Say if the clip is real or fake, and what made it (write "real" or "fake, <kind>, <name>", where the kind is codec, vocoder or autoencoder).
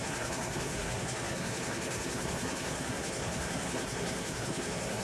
fake, codec, SNAC